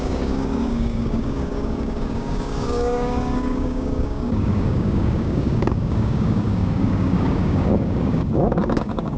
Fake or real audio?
fake